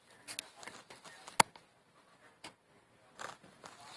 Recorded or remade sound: recorded